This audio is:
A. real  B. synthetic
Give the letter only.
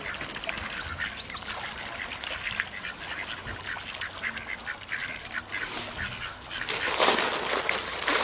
A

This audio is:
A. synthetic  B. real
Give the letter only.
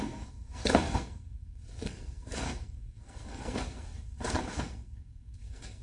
A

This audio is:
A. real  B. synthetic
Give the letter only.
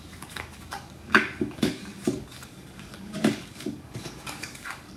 B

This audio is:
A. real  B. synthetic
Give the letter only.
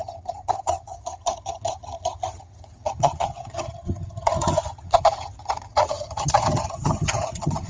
B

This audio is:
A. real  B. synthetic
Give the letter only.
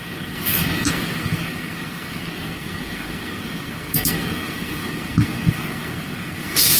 B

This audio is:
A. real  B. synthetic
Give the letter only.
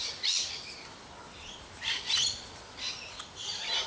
A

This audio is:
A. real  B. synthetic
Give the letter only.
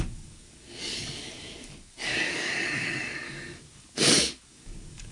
B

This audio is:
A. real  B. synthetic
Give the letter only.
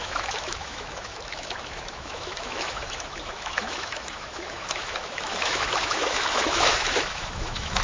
B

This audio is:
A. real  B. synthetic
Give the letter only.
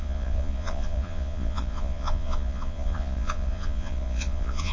B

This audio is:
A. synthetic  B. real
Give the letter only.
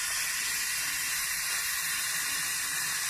B